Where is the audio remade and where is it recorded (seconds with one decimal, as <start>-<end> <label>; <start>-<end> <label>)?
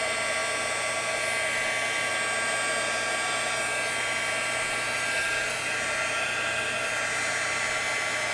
0.0-8.3 recorded